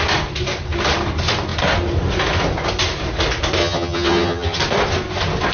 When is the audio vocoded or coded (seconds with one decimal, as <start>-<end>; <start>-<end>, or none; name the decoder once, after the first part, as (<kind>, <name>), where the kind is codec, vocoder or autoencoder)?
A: 3.6-4.6 (vocoder, HiFi-GAN)